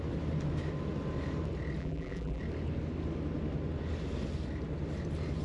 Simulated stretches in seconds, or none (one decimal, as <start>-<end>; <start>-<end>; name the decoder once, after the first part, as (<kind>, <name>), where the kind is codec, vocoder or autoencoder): 1.8-2.4 (vocoder, BigVGAN v2)